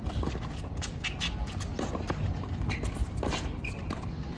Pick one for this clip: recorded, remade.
recorded